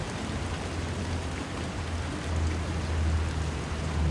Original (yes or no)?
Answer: yes